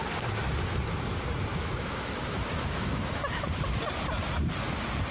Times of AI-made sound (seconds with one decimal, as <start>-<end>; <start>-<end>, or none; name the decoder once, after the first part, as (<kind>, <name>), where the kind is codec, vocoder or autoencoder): 1.5-3.4 (autoencoder, DAC-VAE)